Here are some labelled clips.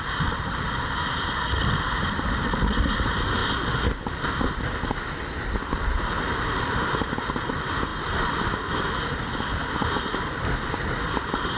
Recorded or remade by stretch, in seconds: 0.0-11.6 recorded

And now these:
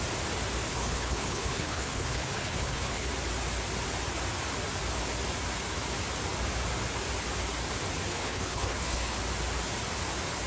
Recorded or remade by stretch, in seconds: 0.0-0.7 recorded; 0.7-3.1 remade; 3.1-8.1 recorded; 8.1-9.2 remade; 9.2-10.5 recorded

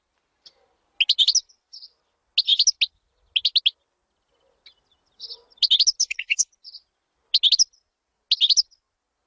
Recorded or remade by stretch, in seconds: 0.0-6.0 recorded; 6.0-6.5 remade; 6.5-9.3 recorded

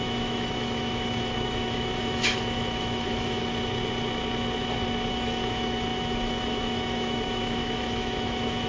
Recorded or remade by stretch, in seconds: 0.0-3.4 remade; 3.4-5.1 recorded; 5.1-8.7 remade